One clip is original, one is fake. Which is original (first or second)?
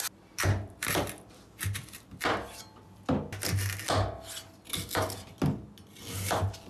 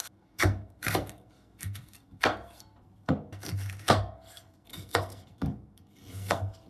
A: first